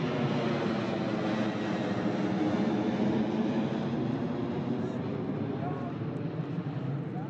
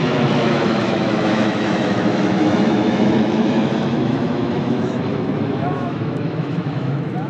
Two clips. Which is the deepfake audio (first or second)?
second